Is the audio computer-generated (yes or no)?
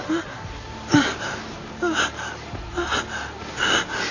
no